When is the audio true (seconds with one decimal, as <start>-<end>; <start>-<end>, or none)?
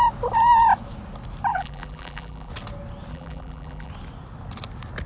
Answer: 0.0-1.5; 2.5-3.1; 3.9-5.1